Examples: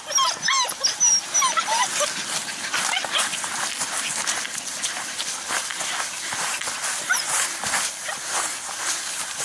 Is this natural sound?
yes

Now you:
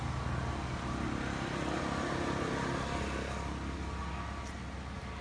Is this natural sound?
yes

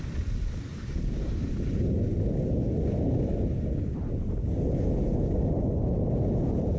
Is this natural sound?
yes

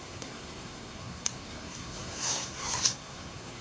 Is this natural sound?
no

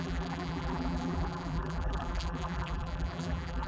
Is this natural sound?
no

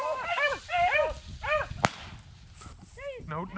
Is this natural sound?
yes